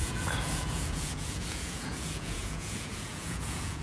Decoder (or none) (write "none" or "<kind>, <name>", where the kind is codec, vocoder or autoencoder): vocoder, Vocos